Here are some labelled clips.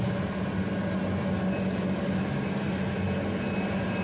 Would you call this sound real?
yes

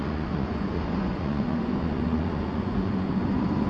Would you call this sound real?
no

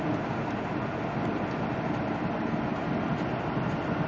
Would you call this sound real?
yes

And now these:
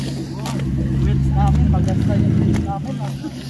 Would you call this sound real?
yes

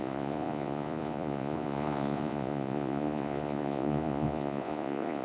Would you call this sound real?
no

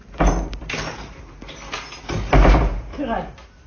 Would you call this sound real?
yes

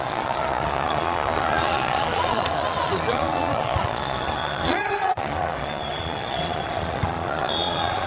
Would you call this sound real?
no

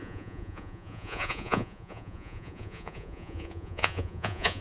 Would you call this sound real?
no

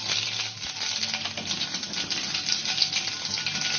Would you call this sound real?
yes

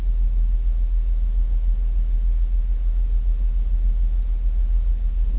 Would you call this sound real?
yes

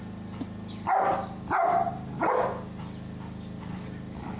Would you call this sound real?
yes